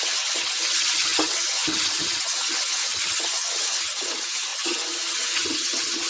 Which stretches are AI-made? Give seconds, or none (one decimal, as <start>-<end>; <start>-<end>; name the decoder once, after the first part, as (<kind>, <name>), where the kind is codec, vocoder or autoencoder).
0.0-6.1 (vocoder, HiFi-GAN)